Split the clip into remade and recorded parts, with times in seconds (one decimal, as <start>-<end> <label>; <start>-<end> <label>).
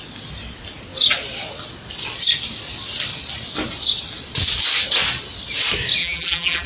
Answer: 0.0-6.0 recorded; 6.0-6.7 remade